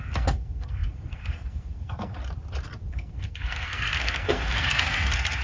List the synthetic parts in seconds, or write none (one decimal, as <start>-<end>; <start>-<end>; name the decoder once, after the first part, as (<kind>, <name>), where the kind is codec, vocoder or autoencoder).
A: 0.0-2.2 (codec, SNAC); 2.9-5.4